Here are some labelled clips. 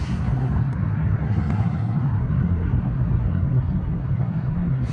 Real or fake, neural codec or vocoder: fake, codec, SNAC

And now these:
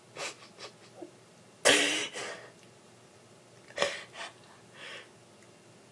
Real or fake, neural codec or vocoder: real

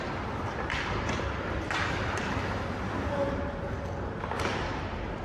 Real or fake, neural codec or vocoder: real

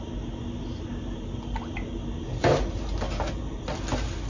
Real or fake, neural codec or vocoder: real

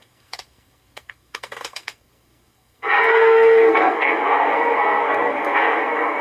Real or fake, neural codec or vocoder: fake, codec, SNAC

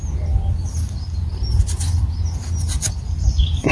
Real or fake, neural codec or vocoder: real